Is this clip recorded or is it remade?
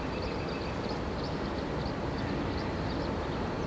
recorded